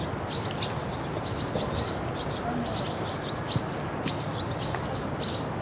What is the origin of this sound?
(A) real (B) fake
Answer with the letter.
A